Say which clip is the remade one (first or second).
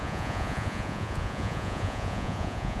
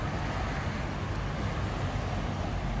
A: first